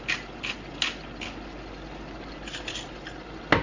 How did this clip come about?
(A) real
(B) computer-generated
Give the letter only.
A